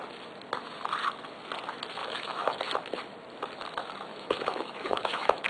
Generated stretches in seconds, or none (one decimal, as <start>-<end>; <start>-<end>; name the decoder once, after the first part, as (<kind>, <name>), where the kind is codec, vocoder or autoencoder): 2.0-2.6 (autoencoder, DAC-VAE); 4.1-5.5

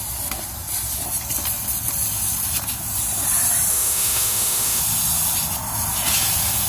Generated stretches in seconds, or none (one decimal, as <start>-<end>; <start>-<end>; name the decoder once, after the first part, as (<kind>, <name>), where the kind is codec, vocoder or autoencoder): 3.7-4.8 (autoencoder, DAC-VAE)

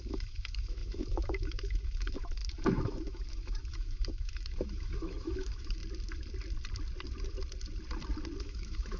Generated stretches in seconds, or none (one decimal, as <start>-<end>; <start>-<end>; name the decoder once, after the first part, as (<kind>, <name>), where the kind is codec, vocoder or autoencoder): 0.0-5.8 (autoencoder, DAC-VAE); 8.4-9.0

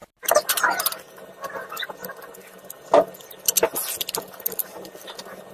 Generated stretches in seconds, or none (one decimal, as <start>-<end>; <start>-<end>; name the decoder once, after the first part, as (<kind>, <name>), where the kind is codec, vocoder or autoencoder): none